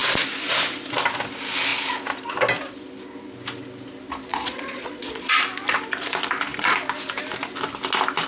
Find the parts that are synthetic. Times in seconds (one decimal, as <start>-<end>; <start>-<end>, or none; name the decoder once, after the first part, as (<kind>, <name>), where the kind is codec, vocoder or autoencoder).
4.3-5.3 (vocoder, Vocos)